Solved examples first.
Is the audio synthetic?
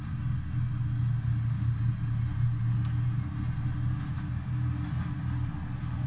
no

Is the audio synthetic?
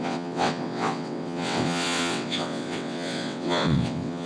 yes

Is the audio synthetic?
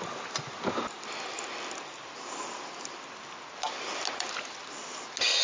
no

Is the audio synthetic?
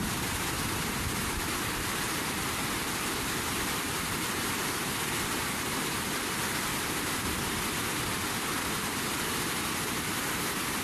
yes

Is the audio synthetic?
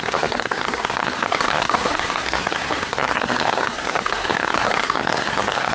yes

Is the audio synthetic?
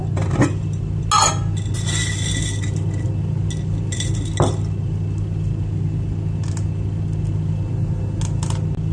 no